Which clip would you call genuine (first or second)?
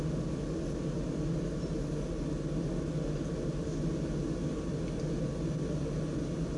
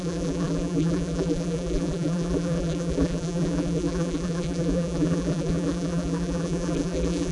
first